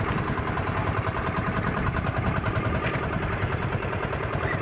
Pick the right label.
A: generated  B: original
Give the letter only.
B